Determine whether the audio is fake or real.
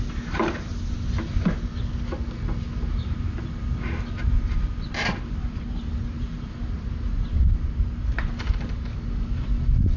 real